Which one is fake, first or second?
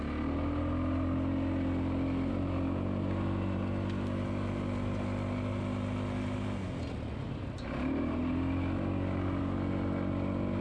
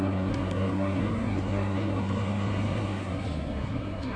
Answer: second